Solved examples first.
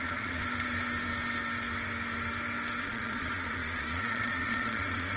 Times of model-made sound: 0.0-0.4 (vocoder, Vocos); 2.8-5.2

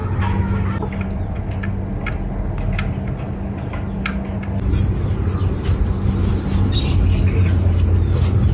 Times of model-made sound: none

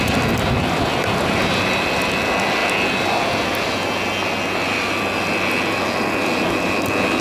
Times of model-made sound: none

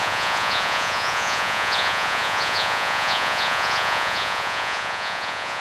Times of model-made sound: 0.0-5.6 (vocoder, Vocos)